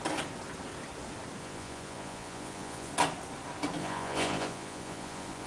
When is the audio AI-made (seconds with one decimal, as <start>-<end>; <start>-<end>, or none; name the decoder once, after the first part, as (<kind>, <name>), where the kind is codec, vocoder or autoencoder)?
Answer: 1.4-2.9 (vocoder, Vocos); 3.8-5.5